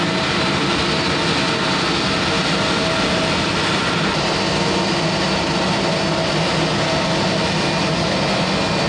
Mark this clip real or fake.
real